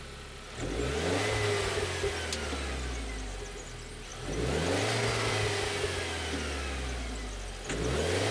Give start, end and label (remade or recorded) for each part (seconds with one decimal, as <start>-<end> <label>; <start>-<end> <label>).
0.0-8.3 recorded